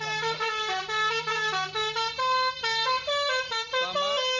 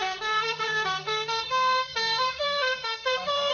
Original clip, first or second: first